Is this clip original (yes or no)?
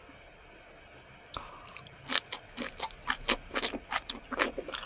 yes